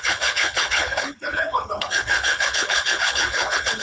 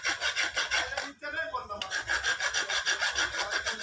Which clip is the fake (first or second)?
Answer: first